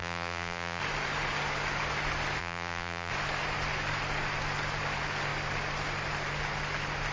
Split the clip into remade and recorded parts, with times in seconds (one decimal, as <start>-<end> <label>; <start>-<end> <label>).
0.0-0.8 remade; 0.8-2.4 recorded; 2.4-3.1 remade; 3.1-7.1 recorded

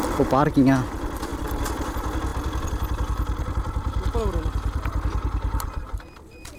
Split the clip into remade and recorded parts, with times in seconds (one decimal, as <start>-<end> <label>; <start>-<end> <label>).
0.0-2.3 recorded; 2.3-6.6 remade